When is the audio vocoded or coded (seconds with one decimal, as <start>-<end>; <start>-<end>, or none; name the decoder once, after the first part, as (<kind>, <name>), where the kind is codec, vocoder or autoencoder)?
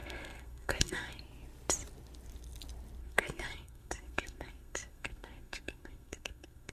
0.0-1.2 (codec, SNAC); 3.0-6.7